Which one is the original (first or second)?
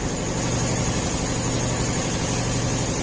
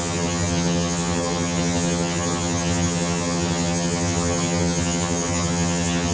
first